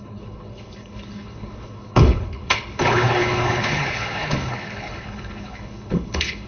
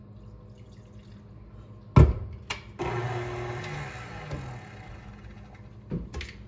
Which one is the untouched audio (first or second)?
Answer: second